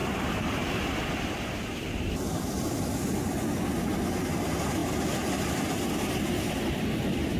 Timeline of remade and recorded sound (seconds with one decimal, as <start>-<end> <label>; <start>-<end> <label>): 0.0-7.4 recorded